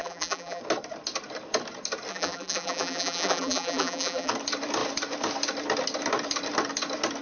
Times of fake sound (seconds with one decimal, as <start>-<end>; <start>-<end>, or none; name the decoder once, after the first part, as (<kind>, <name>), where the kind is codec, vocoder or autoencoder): 0.0-0.6 (vocoder, BigVGAN v2); 2.1-4.3